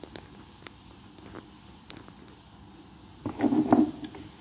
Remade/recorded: recorded